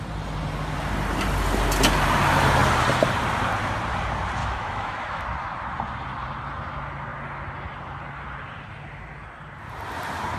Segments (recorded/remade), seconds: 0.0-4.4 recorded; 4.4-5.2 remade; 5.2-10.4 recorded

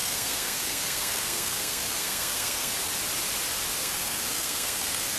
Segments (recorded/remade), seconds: 0.0-2.7 remade; 2.7-3.8 recorded; 3.8-5.2 remade

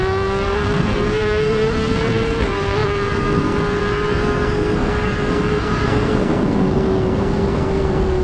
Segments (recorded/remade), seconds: 0.0-8.2 remade

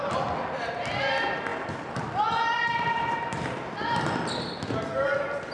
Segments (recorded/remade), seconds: 0.0-5.5 recorded

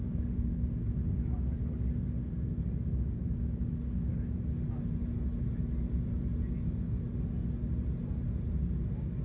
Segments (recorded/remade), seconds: 0.0-4.1 remade; 4.1-9.2 recorded

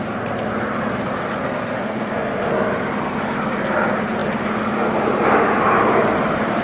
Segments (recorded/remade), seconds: 0.0-1.4 recorded; 1.4-2.5 remade; 2.5-6.6 recorded

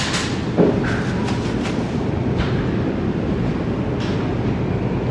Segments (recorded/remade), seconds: 0.0-1.2 recorded; 1.2-3.5 remade; 3.5-5.1 recorded